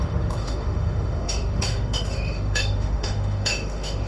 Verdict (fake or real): fake